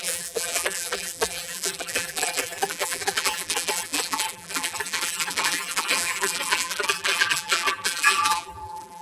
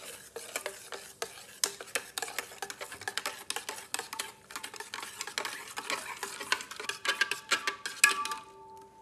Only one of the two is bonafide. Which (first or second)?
second